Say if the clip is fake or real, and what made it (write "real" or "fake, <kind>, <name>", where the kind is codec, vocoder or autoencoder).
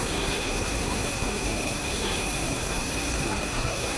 fake, codec, SNAC